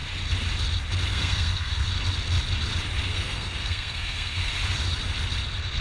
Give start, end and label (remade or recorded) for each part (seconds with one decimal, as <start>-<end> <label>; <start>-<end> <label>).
0.0-1.1 recorded; 1.1-1.9 remade; 1.9-3.1 recorded; 3.1-4.5 remade; 4.5-5.8 recorded